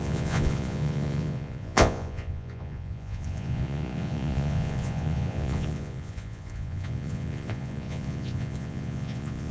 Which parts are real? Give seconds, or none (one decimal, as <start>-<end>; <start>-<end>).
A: none